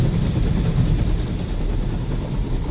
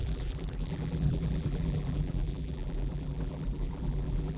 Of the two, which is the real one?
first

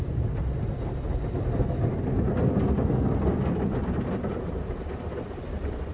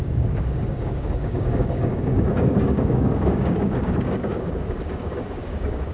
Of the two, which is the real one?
first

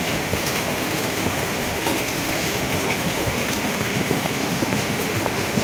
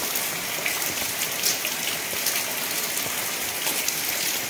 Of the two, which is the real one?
second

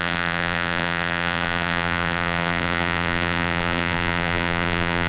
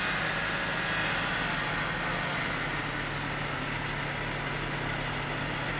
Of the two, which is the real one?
second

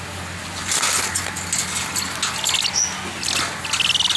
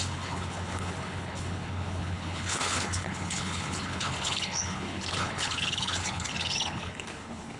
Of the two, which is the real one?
first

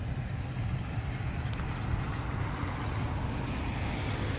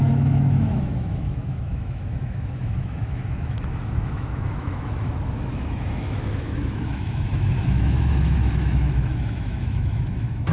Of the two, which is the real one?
first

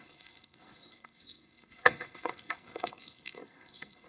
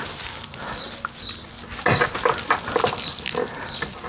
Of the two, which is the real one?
second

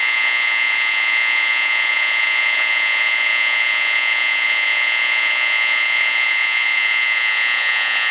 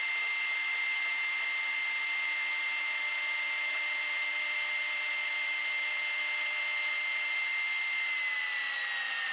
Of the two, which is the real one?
second